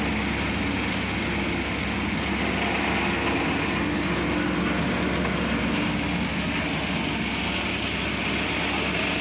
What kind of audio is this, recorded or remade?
recorded